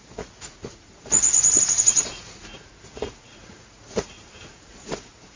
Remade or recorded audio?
remade